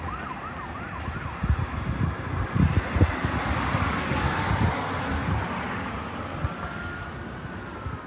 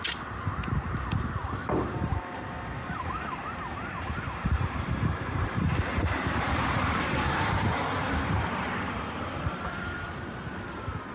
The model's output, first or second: second